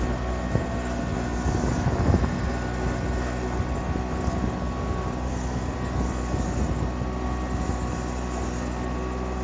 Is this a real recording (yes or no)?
yes